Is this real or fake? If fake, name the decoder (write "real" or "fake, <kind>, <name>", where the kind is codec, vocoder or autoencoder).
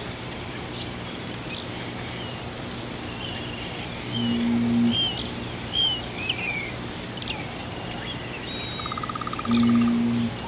real